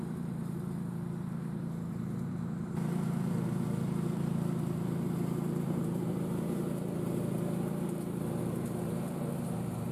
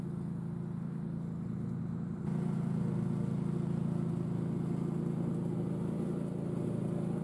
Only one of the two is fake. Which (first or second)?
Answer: first